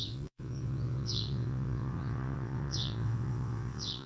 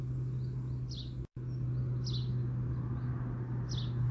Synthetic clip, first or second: first